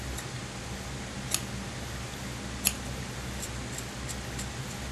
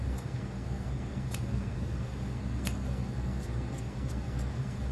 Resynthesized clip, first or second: second